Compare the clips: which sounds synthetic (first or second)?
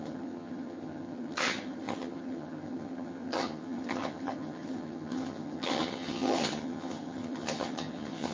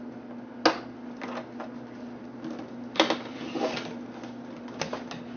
first